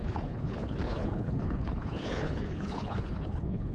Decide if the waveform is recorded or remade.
remade